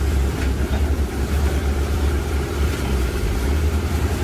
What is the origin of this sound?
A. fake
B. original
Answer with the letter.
A